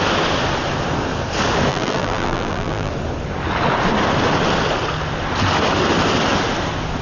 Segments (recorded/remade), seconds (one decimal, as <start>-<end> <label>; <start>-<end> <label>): 0.0-1.7 recorded; 1.7-2.9 remade; 2.9-7.0 recorded